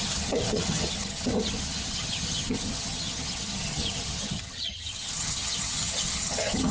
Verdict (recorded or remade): remade